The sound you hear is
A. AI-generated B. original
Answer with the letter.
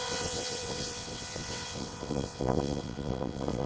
A